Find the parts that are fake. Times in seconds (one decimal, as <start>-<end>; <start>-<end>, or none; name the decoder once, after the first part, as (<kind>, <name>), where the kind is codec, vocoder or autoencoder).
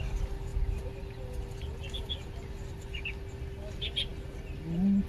none